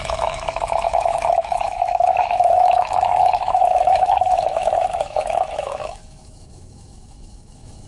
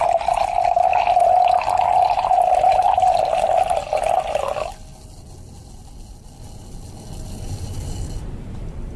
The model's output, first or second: first